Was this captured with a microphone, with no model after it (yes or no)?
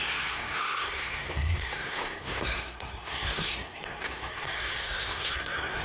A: no